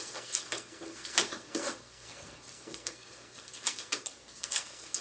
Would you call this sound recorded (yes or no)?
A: no